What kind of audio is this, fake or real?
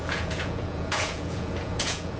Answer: fake